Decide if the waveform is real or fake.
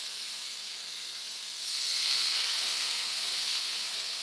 fake